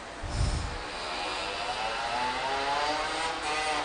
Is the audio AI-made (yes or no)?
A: no